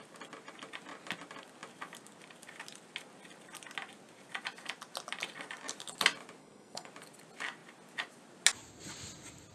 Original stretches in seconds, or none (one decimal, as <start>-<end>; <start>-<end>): 0.0-6.4; 6.9-9.5